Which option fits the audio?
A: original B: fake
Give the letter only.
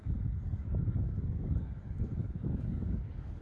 B